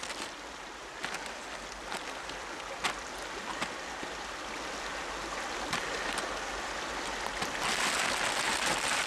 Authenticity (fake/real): real